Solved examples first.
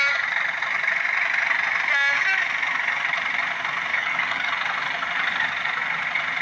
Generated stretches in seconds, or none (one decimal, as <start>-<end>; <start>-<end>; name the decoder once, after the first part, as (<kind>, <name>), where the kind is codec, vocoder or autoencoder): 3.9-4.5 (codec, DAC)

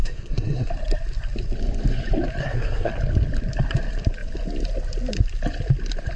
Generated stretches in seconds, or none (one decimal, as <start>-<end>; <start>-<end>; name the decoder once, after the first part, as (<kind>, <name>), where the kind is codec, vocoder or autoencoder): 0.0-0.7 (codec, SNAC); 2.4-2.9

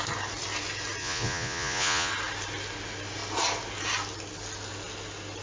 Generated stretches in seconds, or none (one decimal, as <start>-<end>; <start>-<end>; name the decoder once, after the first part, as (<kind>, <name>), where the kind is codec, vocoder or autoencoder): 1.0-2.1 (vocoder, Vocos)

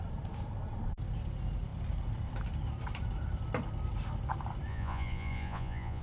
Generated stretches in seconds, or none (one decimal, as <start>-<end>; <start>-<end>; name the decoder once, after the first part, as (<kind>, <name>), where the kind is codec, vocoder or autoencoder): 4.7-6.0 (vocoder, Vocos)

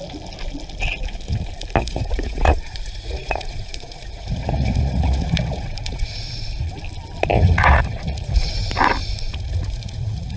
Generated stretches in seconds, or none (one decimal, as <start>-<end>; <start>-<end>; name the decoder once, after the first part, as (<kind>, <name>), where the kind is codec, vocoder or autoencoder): 1.8-6.7 (vocoder, Vocos); 7.3-8.5; 9.0-10.4

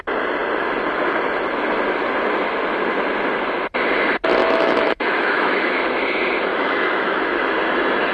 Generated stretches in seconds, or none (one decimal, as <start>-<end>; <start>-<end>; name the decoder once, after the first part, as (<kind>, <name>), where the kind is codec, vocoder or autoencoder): 4.4-5.8 (autoencoder, DAC-VAE); 6.5-7.2

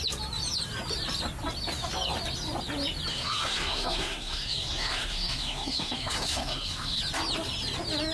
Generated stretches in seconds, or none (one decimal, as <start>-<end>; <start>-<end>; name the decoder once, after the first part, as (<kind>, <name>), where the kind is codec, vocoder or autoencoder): 3.1-7.0 (codec, SNAC)

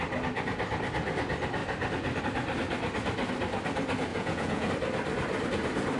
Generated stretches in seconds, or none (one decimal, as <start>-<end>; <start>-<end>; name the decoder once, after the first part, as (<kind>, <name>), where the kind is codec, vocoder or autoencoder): 4.1-4.7 (vocoder, Vocos)